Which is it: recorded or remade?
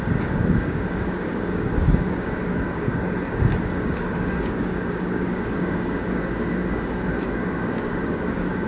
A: remade